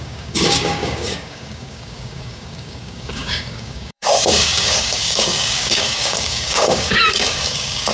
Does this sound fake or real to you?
fake